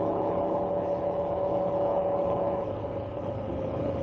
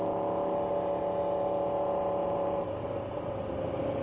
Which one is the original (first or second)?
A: second